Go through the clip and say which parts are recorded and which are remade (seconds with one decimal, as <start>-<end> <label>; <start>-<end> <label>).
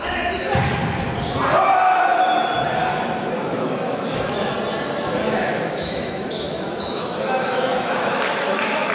0.0-2.9 recorded; 2.9-4.5 remade; 4.5-5.2 recorded; 5.2-8.9 remade